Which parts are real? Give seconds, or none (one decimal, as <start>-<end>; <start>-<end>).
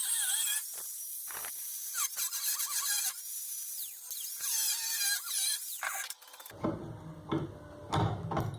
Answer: 0.0-8.6